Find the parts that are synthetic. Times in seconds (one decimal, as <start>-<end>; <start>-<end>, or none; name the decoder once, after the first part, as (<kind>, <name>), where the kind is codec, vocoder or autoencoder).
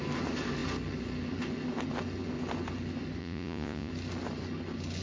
3.2-3.9 (vocoder, Vocos)